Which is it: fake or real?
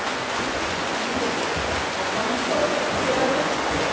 fake